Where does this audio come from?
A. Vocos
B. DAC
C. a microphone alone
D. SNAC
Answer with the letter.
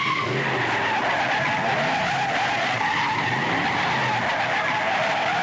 C